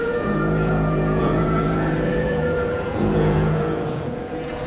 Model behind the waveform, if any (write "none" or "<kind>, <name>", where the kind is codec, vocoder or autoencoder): vocoder, Vocos